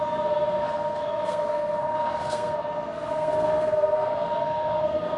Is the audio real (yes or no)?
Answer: no